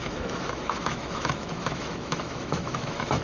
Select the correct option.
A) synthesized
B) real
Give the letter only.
A